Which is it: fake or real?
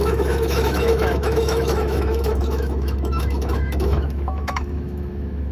fake